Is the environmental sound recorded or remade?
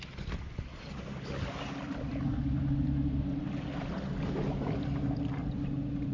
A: recorded